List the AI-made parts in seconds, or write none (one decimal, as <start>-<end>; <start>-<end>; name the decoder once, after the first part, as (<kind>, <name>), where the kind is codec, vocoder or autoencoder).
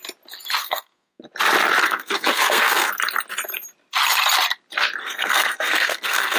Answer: 0.6-1.2 (codec, SNAC); 1.8-2.9; 5.0-6.4